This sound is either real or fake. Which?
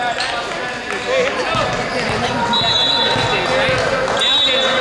real